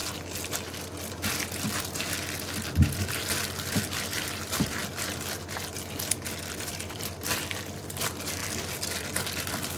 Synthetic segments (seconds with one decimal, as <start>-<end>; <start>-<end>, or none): 3.1-4.8; 6.4-8.4; 8.9-9.8